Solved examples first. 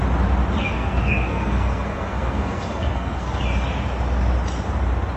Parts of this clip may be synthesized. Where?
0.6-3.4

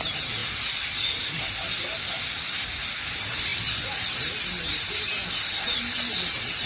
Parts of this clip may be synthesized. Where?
none

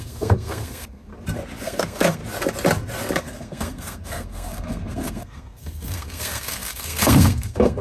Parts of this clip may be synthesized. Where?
0.0-1.1; 1.6-2.2; 3.2-7.8

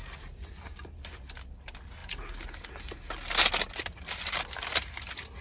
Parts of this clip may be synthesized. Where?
none

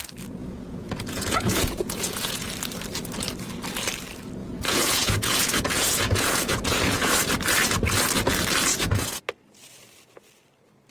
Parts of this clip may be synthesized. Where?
0.4-2.5; 4.4-7.1; 8.7-9.2

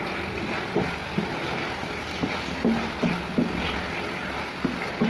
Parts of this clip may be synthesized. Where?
none